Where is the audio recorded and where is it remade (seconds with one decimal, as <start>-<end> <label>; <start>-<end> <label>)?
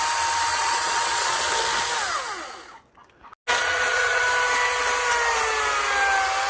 0.0-0.5 recorded; 0.5-1.5 remade; 1.5-3.6 recorded; 3.6-4.2 remade; 4.2-6.5 recorded